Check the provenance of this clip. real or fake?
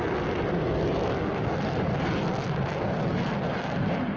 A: fake